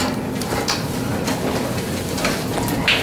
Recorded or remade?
recorded